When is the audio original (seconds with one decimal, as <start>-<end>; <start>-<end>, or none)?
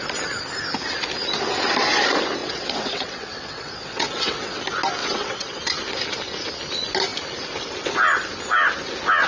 0.0-2.4; 4.6-5.0; 5.6-9.3